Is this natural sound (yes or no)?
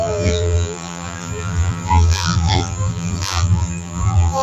no